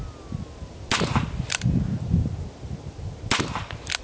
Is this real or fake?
real